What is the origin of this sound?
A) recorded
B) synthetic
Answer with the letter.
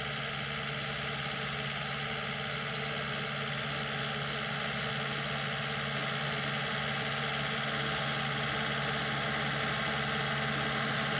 A